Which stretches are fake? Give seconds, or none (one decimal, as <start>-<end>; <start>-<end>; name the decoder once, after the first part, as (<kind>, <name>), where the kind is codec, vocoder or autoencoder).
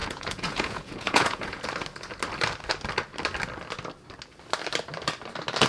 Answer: 0.0-1.6 (vocoder, Vocos)